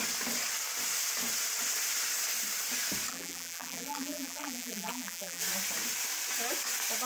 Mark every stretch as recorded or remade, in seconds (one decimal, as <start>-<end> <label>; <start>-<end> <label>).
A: 0.0-3.1 recorded; 3.1-5.4 remade; 5.4-7.1 recorded

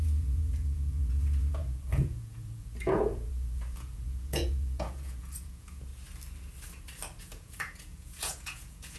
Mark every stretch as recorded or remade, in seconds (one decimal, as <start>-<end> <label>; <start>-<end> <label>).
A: 0.0-5.9 remade; 5.9-7.2 recorded; 7.2-9.0 remade

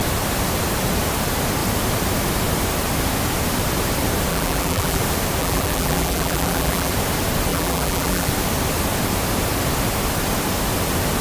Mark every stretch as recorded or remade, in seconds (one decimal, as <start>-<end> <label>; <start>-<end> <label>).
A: 0.0-4.3 recorded; 4.3-5.0 remade; 5.0-5.4 recorded; 5.4-6.9 remade; 6.9-7.5 recorded; 7.5-8.3 remade; 8.3-11.2 recorded

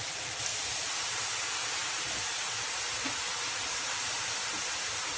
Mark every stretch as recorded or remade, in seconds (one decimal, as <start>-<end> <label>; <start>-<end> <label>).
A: 0.0-5.2 recorded

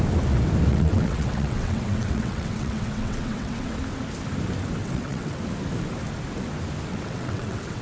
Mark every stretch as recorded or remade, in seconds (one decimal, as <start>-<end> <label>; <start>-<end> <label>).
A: 0.0-0.7 recorded; 0.7-3.7 remade; 3.7-4.8 recorded; 4.8-5.4 remade; 5.4-6.9 recorded; 6.9-7.8 remade

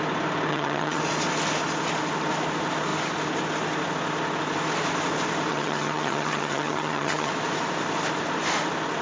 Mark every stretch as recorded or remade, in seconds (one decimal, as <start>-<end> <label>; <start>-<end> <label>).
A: 0.0-0.5 recorded; 0.5-1.0 remade; 1.0-5.5 recorded; 5.5-7.3 remade; 7.3-9.0 recorded